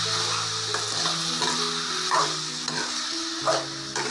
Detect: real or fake real